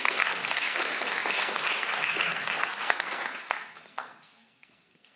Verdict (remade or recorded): remade